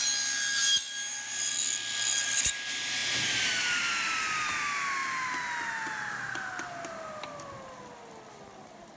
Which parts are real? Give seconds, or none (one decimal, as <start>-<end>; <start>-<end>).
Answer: 0.0-9.0